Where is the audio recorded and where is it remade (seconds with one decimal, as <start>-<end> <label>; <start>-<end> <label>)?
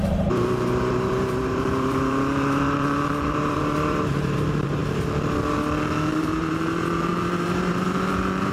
0.0-4.8 remade; 4.8-6.2 recorded; 6.2-8.5 remade